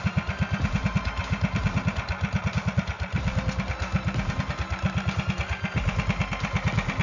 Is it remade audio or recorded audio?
recorded